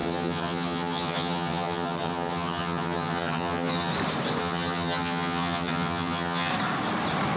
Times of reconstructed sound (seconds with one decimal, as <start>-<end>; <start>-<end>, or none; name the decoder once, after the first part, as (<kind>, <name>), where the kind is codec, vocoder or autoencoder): 0.0-3.9 (vocoder, HiFi-GAN); 4.4-6.5